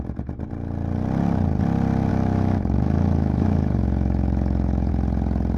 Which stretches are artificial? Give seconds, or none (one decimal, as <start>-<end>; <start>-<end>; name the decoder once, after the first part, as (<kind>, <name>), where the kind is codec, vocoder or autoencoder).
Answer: 2.1-4.9 (autoencoder, DAC-VAE)